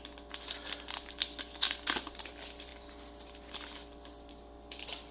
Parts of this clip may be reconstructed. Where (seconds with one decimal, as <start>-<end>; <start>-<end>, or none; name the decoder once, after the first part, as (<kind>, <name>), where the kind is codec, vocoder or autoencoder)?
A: none